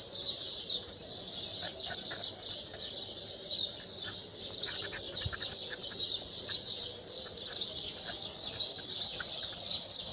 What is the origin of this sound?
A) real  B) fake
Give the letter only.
B